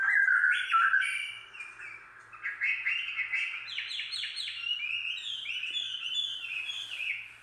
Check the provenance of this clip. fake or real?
real